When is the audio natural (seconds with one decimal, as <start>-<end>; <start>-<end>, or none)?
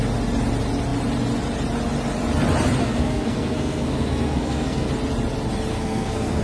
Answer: 0.0-2.8; 4.9-5.7